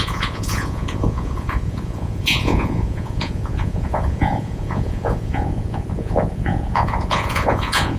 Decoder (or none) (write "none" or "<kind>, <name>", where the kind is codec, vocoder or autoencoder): vocoder, Vocos